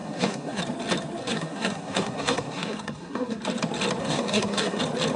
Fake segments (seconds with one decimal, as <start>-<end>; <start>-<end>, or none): 0.0-0.6; 1.2-3.4; 4.0-4.8